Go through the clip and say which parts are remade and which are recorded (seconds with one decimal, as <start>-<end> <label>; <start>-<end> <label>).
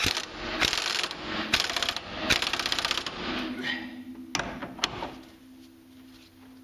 0.0-6.6 recorded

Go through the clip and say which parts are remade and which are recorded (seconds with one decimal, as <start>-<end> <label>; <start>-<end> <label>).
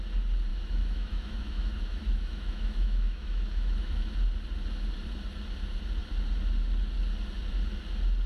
0.0-0.5 recorded; 0.5-4.1 remade; 4.1-8.3 recorded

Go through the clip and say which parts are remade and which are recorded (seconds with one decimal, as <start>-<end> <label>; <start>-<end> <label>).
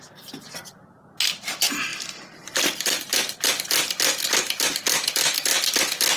0.0-1.9 recorded; 1.9-3.0 remade; 3.0-6.2 recorded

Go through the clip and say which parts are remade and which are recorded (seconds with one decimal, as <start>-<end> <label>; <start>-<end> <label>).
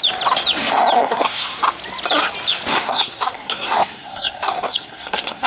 0.0-1.0 recorded; 1.0-1.6 remade; 1.6-2.7 recorded; 2.7-5.5 remade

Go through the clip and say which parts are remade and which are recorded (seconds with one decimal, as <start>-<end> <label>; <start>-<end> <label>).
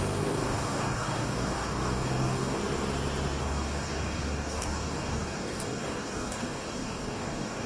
0.0-2.6 remade; 2.6-3.4 recorded; 3.4-7.7 remade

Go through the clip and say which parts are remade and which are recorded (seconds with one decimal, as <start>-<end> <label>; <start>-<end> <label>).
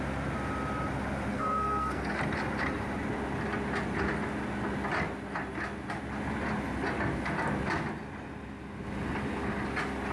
0.0-1.3 recorded; 1.3-2.2 remade; 2.2-10.1 recorded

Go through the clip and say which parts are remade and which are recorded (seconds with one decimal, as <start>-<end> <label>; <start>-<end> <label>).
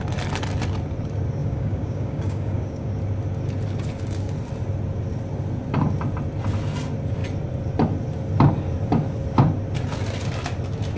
0.0-1.4 recorded; 1.4-2.9 remade; 2.9-11.0 recorded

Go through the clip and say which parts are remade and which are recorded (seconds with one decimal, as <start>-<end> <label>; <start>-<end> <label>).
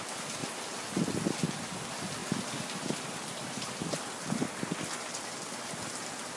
0.0-2.2 recorded; 2.2-4.6 remade; 4.6-6.4 recorded